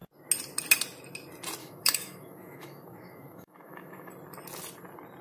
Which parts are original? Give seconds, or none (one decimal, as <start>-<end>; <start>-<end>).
0.0-1.6; 4.1-5.2